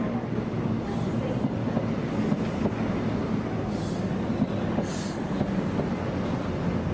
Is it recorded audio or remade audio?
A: recorded